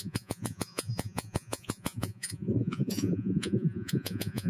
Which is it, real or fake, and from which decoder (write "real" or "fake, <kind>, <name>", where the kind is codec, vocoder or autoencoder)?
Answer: fake, vocoder, Vocos